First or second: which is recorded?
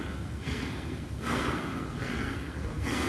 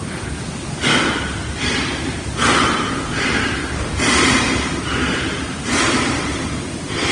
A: second